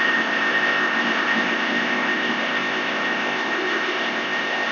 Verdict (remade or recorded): remade